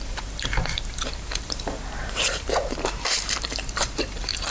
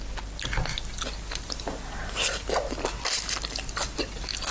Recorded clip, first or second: second